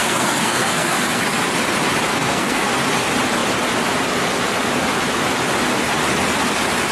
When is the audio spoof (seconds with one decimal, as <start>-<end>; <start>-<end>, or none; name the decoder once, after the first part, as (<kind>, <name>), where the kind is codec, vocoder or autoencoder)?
0.0-1.2 (codec, SNAC); 2.1-2.7